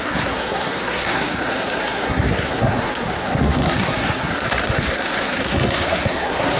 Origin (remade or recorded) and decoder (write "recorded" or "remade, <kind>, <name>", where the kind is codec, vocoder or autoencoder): remade, codec, SNAC